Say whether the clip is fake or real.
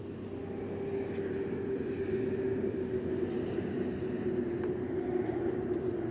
real